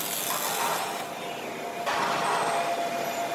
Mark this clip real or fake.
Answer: real